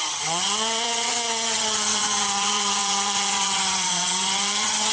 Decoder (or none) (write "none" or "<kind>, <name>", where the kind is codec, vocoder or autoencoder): vocoder, HiFi-GAN